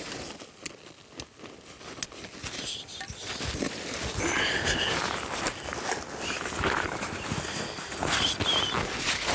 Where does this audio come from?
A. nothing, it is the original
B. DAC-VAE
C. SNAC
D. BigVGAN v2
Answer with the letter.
A